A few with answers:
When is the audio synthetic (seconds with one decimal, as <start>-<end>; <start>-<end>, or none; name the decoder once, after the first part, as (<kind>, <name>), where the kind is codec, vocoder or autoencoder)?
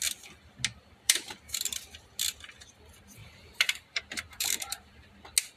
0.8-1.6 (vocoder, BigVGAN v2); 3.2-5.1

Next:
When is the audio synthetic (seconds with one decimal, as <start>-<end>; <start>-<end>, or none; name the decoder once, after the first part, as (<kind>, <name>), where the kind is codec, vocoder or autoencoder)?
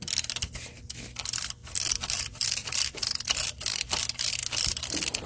1.6-4.0 (vocoder, BigVGAN v2)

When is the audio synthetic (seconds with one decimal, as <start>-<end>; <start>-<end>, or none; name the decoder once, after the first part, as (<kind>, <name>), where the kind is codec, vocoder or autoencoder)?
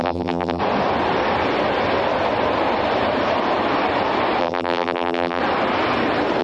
0.0-0.6 (vocoder, BigVGAN v2); 4.4-5.4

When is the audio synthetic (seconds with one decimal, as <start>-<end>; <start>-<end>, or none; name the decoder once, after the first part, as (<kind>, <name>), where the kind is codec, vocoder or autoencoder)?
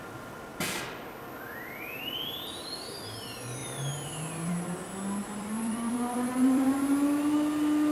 5.2-6.8 (vocoder, BigVGAN v2)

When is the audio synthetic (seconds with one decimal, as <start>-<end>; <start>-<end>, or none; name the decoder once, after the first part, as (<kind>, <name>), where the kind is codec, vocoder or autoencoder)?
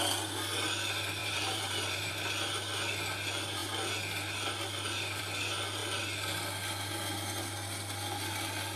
1.2-2.1 (vocoder, BigVGAN v2)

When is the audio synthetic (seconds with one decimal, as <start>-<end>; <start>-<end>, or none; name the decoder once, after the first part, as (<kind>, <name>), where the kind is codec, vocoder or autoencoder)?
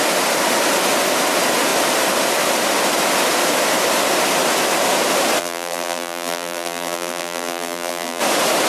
5.4-8.2 (vocoder, BigVGAN v2)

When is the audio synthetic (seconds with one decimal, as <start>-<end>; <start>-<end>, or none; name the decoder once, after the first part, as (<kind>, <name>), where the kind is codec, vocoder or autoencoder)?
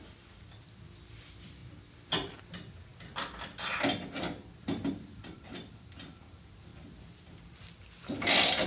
0.0-2.9 (vocoder, BigVGAN v2); 4.9-8.7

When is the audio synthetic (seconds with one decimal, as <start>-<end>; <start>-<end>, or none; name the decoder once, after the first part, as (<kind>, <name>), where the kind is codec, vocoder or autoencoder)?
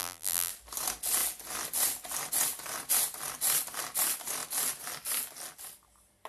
0.0-0.5 (vocoder, BigVGAN v2)